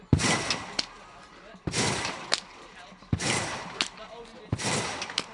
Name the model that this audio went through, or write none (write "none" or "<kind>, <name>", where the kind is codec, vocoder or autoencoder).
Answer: none